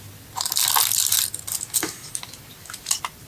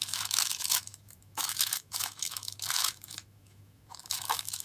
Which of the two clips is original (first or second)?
first